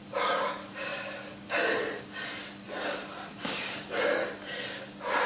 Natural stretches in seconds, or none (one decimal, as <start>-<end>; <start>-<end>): 0.0-3.3; 3.9-5.3

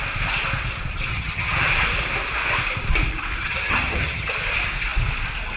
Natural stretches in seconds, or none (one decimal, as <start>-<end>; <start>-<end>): 0.0-1.1; 1.7-3.4; 4.3-5.6

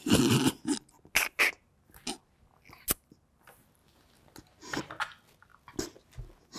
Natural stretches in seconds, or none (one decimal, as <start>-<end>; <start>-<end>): 0.0-6.6

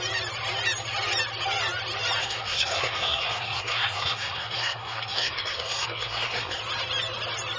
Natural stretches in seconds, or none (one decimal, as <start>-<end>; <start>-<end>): 0.0-2.2; 6.6-7.6

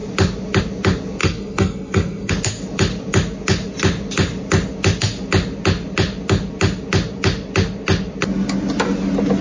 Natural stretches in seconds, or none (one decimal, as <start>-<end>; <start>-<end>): 0.0-1.2; 2.3-9.4

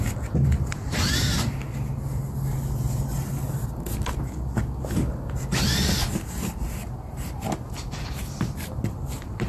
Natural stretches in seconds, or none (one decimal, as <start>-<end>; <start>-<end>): 0.0-6.0